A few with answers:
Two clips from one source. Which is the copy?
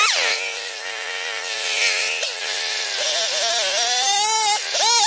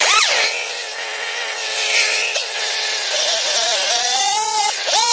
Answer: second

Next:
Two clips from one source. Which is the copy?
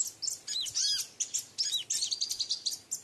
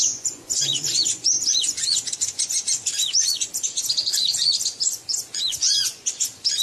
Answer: second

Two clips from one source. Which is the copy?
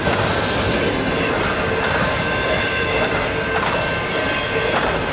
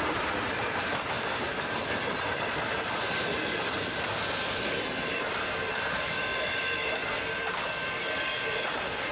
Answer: second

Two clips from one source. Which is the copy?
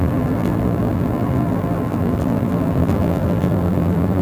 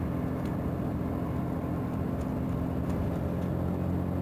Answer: first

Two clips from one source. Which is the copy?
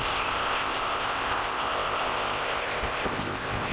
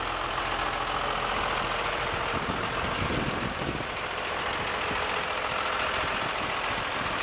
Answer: first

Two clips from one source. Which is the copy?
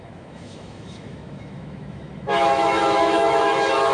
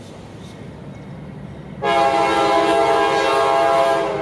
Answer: first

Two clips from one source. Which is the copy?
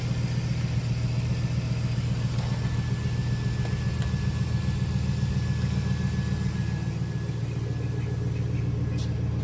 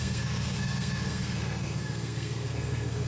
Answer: second